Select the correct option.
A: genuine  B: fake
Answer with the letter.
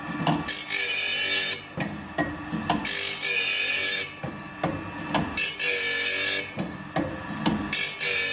A